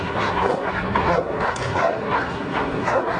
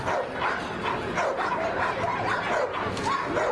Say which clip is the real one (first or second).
second